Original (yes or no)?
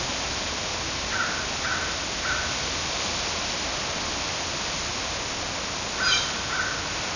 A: yes